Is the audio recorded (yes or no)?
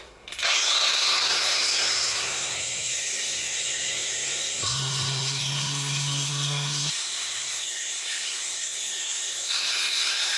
no